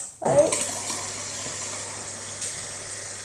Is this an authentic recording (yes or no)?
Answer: yes